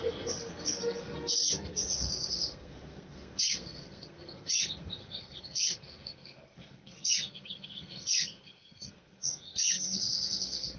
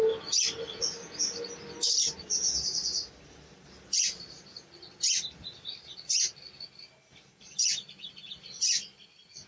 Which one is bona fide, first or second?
second